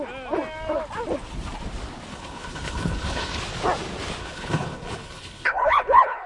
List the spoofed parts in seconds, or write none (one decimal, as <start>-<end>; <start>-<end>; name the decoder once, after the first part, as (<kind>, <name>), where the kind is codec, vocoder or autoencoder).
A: 2.1-3.4 (codec, HILCodec); 4.2-6.3